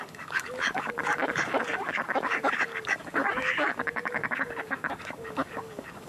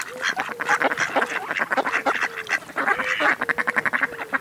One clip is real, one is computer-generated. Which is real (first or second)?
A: second